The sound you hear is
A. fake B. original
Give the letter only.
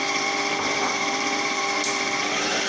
A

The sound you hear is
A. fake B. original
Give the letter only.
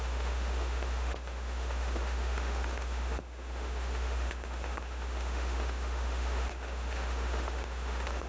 A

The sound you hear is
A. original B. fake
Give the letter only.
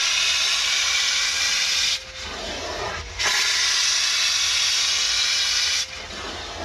A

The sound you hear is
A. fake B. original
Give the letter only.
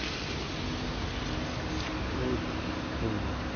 B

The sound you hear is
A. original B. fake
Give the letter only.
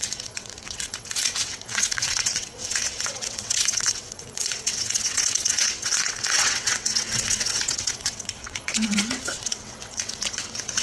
B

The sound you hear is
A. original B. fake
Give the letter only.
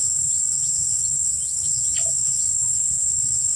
A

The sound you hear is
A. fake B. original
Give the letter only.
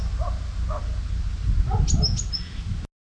B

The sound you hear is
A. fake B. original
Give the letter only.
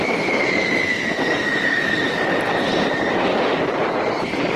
A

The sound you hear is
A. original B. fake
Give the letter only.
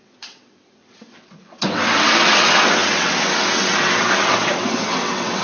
B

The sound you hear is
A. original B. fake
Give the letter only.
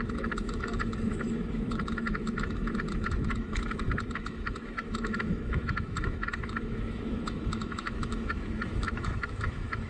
B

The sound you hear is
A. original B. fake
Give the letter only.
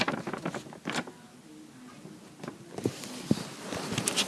A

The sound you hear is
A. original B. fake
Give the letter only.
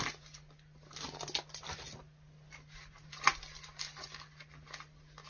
A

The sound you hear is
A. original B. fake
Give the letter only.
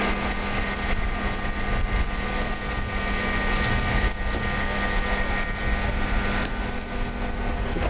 A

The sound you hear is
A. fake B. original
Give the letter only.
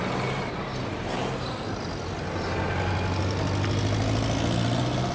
B